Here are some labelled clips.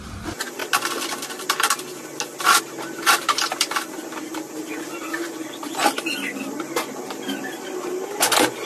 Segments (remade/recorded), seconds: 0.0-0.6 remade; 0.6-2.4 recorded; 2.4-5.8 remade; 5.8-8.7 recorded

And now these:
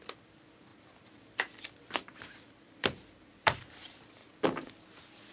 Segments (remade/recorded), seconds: 0.0-0.7 remade; 0.7-1.6 recorded; 1.6-4.2 remade; 4.2-5.3 recorded

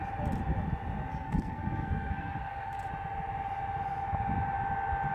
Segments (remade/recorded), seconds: 0.0-1.1 recorded; 1.1-2.9 remade; 2.9-5.1 recorded